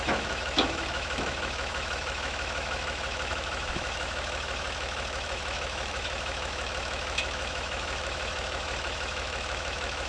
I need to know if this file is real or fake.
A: fake